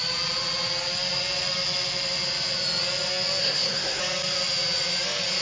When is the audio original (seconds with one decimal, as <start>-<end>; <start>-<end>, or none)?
0.0-3.4; 4.0-5.4